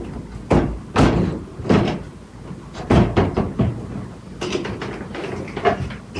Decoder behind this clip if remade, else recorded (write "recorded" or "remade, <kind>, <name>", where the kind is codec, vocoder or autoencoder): recorded